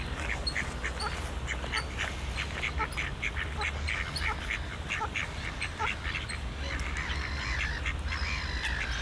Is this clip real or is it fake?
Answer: real